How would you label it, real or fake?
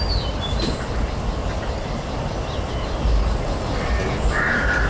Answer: real